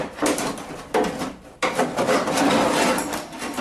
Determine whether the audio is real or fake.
real